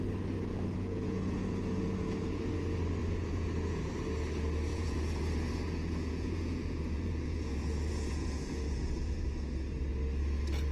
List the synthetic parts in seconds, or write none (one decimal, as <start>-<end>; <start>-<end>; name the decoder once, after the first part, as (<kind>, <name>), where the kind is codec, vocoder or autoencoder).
0.5-2.5 (vocoder, Vocos); 3.0-3.9; 4.7-9.2